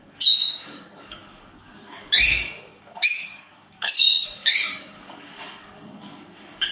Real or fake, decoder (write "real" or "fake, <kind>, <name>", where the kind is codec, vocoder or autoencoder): fake, codec, DAC